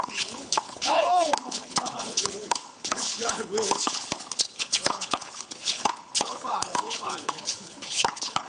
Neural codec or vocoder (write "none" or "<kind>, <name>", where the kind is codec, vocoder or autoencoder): codec, HILCodec